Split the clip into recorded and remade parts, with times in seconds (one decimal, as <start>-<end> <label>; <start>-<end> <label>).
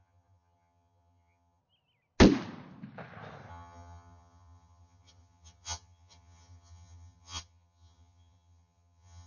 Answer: 0.0-1.6 remade; 1.6-3.5 recorded; 3.5-9.3 remade